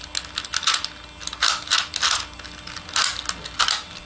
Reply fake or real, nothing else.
real